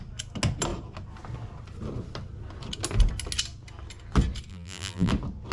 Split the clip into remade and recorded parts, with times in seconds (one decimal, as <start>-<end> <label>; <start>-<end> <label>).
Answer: 0.0-4.5 recorded; 4.5-5.1 remade; 5.1-5.5 recorded